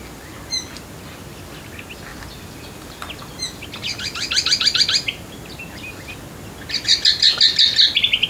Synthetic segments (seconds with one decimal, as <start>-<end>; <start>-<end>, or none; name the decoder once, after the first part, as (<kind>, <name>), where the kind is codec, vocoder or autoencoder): none